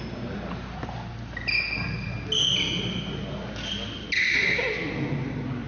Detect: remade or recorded recorded